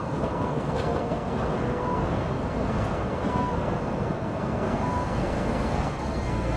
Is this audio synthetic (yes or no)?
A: yes